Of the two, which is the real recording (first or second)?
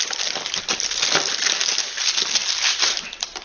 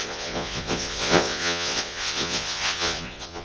first